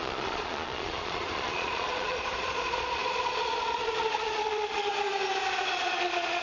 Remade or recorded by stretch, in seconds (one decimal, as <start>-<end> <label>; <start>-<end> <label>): 0.0-4.9 remade; 4.9-5.7 recorded; 5.7-6.4 remade